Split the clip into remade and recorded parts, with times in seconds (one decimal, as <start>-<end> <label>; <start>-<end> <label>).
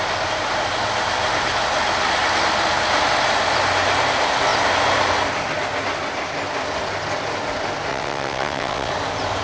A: 0.0-7.9 recorded; 7.9-8.9 remade; 8.9-9.4 recorded